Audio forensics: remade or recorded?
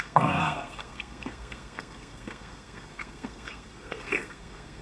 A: remade